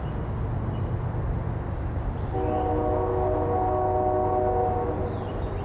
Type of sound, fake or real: real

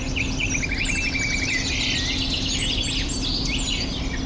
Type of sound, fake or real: real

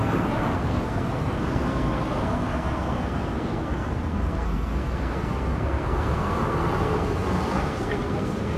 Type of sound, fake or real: fake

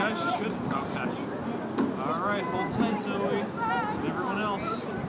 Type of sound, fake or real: real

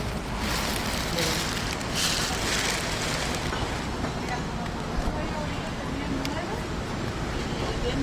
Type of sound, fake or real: real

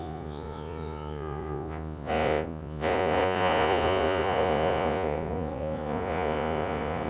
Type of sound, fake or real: fake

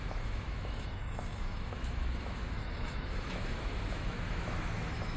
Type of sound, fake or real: fake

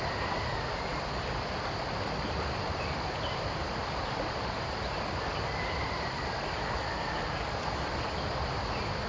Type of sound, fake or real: real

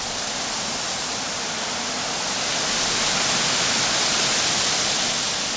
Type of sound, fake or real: real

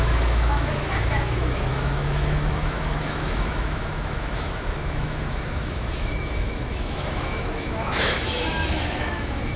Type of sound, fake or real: fake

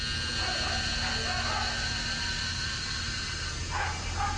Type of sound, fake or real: real